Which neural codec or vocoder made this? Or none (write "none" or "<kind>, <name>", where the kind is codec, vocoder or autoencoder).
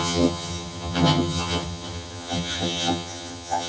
vocoder, HiFi-GAN